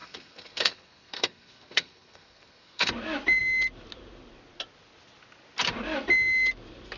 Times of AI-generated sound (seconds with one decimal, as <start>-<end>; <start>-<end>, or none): 0.0-2.9